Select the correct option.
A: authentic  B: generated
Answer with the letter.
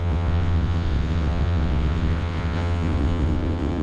B